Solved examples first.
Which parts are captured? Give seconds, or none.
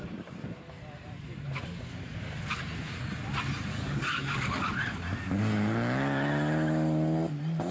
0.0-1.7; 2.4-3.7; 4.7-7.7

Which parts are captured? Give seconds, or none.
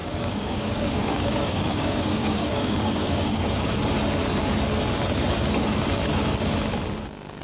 3.7-7.4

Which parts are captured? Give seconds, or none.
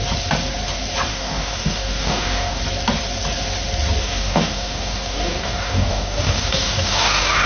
0.0-1.1; 2.6-4.0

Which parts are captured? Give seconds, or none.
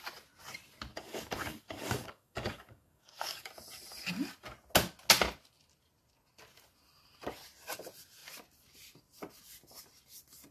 0.0-0.9; 3.5-10.5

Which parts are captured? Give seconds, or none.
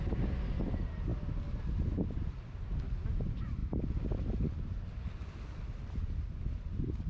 0.0-7.1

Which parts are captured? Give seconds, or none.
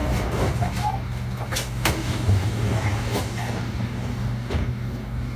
none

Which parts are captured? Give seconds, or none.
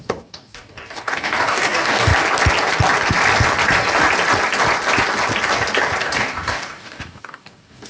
2.1-6.0